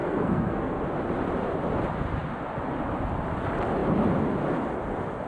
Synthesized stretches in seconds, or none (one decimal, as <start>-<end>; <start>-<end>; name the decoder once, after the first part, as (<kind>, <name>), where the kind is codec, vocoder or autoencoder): 0.0-0.8 (codec, SNAC)